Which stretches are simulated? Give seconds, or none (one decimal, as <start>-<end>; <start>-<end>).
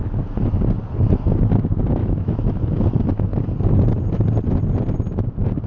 2.0-2.6